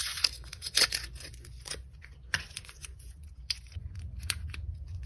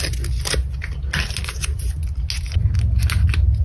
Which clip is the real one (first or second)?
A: second